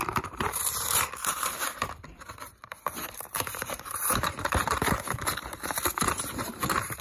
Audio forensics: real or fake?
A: fake